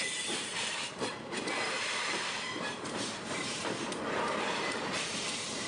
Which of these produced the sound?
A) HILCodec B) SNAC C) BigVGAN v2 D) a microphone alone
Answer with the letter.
C